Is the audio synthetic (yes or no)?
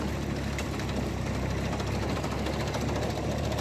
no